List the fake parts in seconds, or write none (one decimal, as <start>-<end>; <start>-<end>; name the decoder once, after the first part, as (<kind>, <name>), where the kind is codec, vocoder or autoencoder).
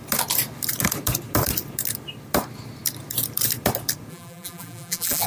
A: 4.1-5.3 (vocoder, BigVGAN v2)